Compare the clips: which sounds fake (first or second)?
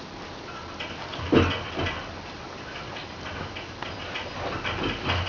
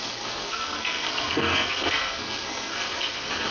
second